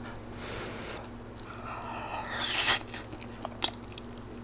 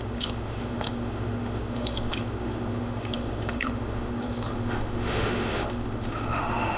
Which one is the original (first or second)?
first